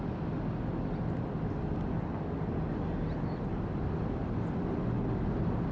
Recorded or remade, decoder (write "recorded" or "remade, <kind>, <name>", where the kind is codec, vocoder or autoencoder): recorded